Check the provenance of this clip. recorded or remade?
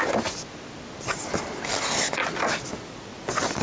recorded